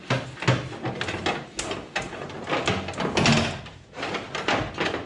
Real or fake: real